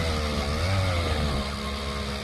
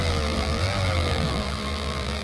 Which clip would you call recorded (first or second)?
first